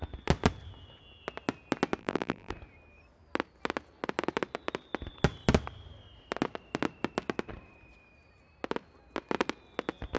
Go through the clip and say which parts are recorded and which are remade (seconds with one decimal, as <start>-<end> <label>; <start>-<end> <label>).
0.0-2.0 recorded; 2.0-2.5 remade; 2.5-10.2 recorded